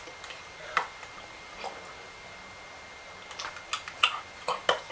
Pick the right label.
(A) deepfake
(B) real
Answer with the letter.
B